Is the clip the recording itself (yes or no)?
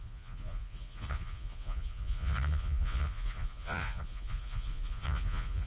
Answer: no